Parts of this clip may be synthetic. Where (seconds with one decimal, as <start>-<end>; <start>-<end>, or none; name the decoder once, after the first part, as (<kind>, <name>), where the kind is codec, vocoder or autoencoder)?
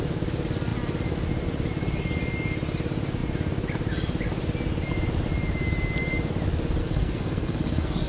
6.8-8.1 (codec, SNAC)